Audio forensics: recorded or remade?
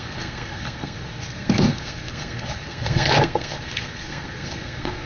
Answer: remade